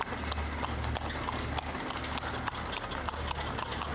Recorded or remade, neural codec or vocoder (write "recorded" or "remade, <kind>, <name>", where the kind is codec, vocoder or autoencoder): recorded